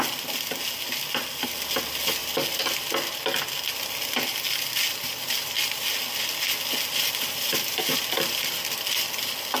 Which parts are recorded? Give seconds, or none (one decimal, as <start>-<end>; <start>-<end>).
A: 0.0-9.6